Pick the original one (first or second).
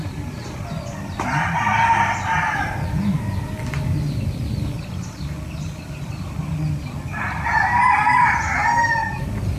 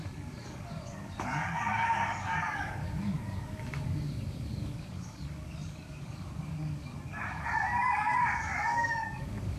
first